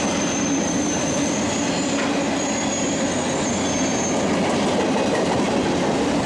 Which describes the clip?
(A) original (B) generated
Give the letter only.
A